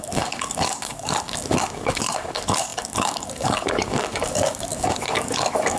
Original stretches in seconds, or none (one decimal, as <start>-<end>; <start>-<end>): none